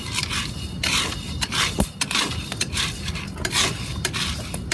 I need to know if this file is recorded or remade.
recorded